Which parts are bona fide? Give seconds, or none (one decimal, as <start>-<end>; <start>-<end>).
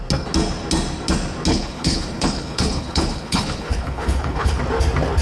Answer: 0.0-1.5; 4.6-5.2